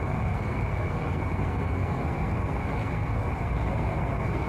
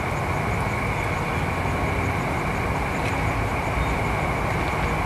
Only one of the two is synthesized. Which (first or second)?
first